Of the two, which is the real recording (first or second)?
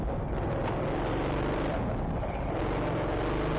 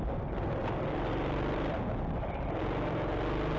first